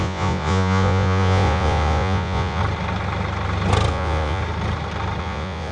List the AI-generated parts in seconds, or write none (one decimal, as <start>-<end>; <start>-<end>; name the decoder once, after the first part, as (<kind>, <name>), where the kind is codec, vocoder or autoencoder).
0.0-2.6 (vocoder, Vocos); 3.9-4.4; 5.2-5.7